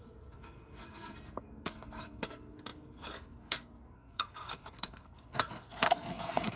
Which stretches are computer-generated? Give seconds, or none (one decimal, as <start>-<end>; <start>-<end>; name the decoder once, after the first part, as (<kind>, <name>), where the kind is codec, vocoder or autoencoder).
0.0-6.6 (codec, SNAC)